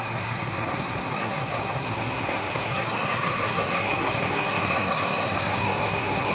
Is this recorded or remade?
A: remade